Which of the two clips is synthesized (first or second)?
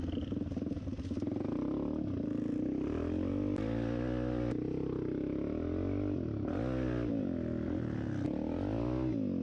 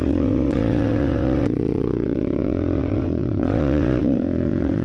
second